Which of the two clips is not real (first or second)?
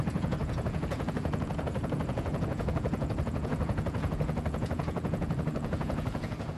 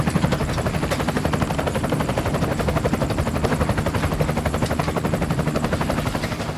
first